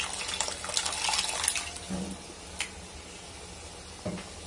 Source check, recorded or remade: recorded